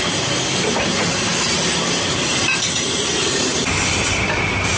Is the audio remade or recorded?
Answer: remade